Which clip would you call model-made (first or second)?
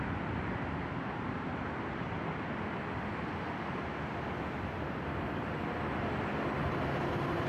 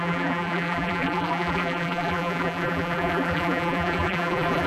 second